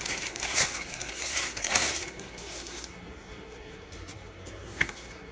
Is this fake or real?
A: fake